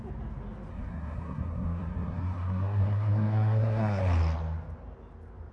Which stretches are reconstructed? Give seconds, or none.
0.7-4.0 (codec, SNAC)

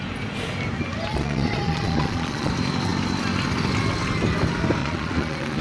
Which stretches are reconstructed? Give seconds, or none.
1.1-2.5 (vocoder, Vocos); 4.8-5.6

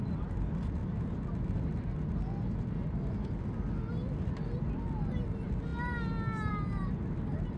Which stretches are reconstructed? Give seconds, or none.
none

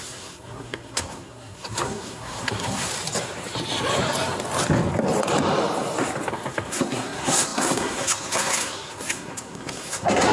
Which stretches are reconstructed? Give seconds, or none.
0.0-2.9 (codec, SNAC); 6.3-10.3

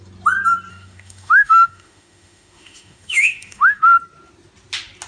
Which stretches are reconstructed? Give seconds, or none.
0.7-3.8 (autoencoder, DAC-VAE)

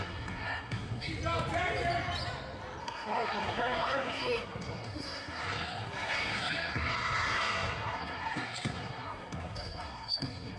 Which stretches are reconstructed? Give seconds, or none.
0.0-1.1 (codec, SNAC); 2.8-10.6